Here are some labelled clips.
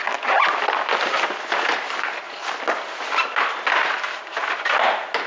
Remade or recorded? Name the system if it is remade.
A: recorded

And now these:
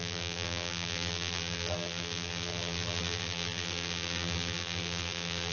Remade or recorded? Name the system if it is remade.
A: remade, vocoder, BigVGAN v2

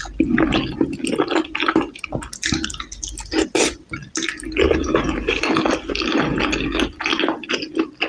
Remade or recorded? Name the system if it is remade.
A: recorded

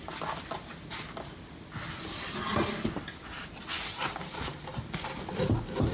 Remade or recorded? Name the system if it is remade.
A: recorded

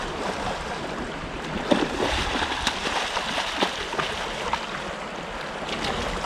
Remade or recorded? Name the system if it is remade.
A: recorded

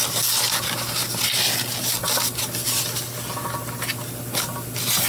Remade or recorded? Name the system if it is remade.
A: recorded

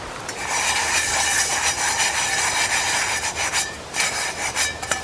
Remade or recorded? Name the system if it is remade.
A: remade, vocoder, BigVGAN v2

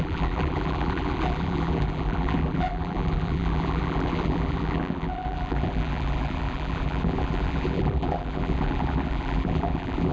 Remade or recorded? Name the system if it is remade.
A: remade, vocoder, BigVGAN v2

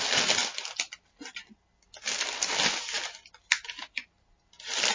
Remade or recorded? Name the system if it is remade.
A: recorded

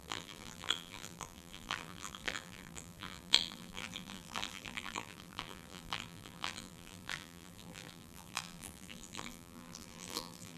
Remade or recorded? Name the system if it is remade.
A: remade, vocoder, BigVGAN v2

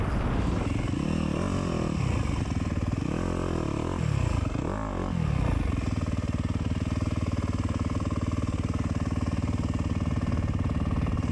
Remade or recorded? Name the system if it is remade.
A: recorded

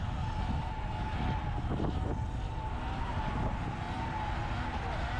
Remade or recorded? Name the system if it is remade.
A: recorded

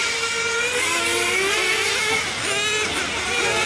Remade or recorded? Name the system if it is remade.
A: recorded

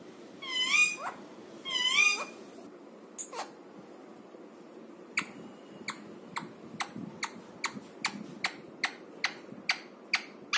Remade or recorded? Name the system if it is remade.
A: recorded